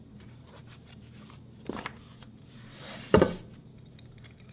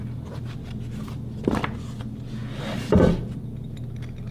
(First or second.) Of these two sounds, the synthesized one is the first